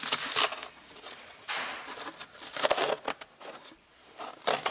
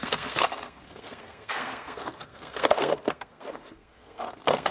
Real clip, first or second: first